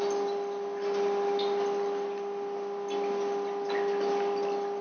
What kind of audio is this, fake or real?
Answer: real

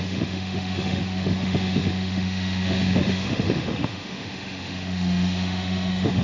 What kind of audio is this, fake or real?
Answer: fake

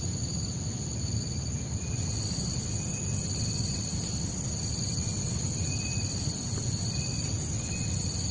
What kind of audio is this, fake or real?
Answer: real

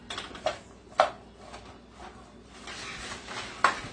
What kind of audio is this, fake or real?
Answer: real